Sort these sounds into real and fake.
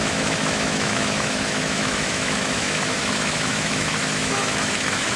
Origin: fake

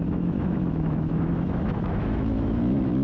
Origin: fake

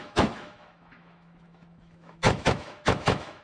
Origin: fake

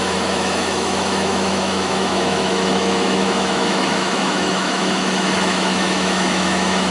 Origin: fake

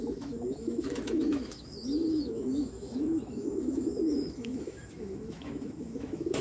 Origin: fake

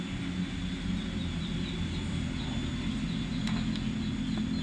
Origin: real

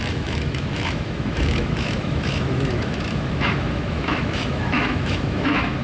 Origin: fake